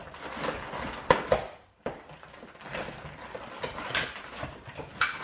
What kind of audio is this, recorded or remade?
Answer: recorded